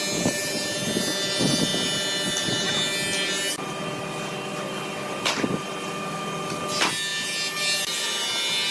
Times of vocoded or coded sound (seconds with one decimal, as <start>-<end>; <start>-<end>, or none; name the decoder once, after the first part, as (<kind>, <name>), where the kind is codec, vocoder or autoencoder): none